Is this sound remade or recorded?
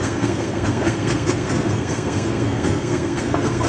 remade